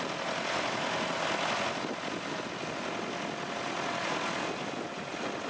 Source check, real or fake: real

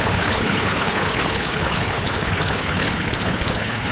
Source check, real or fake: fake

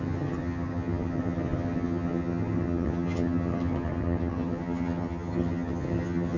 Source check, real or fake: fake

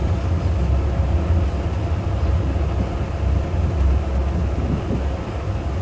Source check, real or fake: real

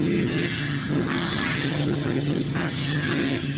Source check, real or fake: fake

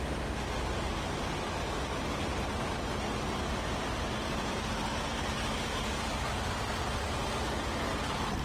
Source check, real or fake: real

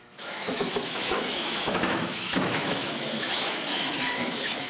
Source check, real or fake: fake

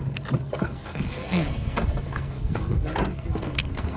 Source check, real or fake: fake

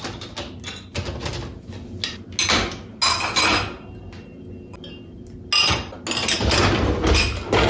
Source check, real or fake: real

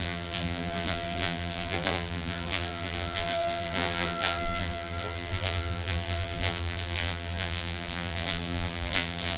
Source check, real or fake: fake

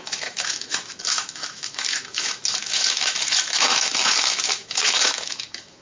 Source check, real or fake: fake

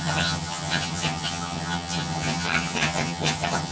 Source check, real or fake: fake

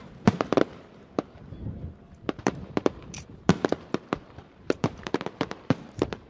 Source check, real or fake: fake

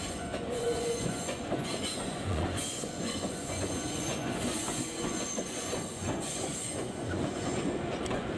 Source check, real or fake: fake